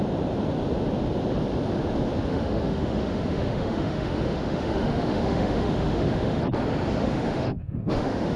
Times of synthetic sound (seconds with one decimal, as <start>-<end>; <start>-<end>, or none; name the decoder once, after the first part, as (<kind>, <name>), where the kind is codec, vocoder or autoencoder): 2.3-6.4 (autoencoder, DAC-VAE); 7.0-8.4